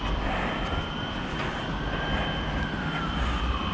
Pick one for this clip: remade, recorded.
recorded